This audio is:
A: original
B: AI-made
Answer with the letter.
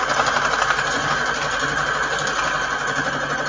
A